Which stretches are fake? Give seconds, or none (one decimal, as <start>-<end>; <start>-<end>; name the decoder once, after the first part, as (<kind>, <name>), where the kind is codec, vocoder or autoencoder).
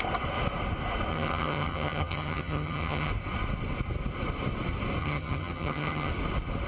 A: 1.1-3.1 (vocoder, HiFi-GAN); 5.0-6.1